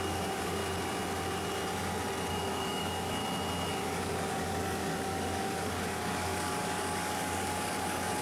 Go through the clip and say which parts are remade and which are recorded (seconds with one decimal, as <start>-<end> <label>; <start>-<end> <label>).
0.0-0.6 remade; 0.6-2.3 recorded; 2.3-3.2 remade; 3.2-3.7 recorded; 3.7-8.2 remade